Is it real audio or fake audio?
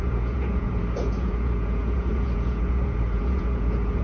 fake